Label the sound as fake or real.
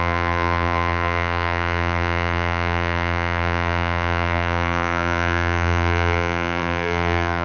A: fake